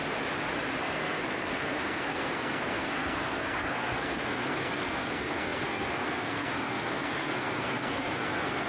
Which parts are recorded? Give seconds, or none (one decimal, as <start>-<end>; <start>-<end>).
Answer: 0.0-0.8